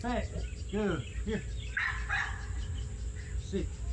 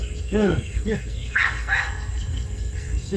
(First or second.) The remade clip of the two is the second